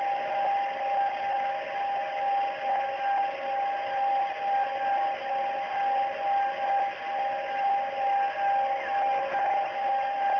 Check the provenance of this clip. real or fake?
real